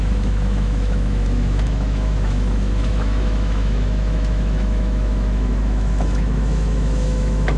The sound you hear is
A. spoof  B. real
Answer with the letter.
A